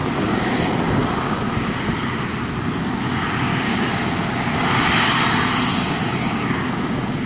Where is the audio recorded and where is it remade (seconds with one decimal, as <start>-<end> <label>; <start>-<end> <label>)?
0.0-0.5 remade; 0.5-1.0 recorded; 1.0-1.8 remade; 1.8-3.5 recorded; 3.5-5.2 remade; 5.2-6.0 recorded; 6.0-7.3 remade